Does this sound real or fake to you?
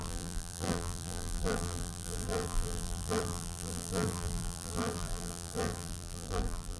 fake